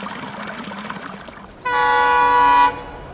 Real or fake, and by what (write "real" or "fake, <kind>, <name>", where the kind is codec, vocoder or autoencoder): real